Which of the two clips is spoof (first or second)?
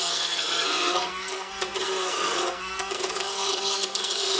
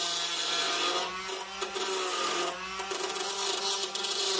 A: first